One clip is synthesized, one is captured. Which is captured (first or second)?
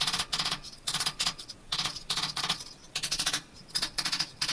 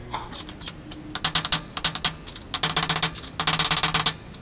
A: second